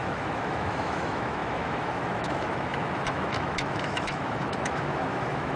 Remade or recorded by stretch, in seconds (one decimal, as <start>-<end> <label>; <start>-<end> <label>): 0.0-5.6 remade